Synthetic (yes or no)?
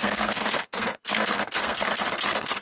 yes